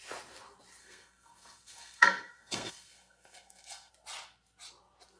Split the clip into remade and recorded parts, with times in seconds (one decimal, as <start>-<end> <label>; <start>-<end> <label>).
0.0-0.8 recorded; 0.8-3.9 remade; 3.9-5.2 recorded